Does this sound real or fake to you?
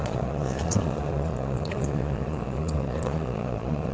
fake